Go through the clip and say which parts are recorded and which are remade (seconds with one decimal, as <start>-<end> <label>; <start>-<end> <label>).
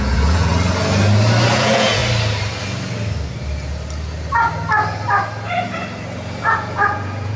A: 0.0-0.5 remade; 0.5-1.5 recorded; 1.5-2.0 remade; 2.0-6.4 recorded; 6.4-7.4 remade